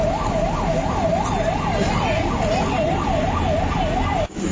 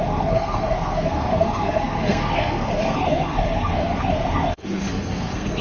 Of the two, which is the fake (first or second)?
second